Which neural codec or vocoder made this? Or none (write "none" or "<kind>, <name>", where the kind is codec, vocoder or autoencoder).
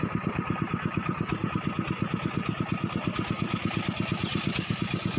none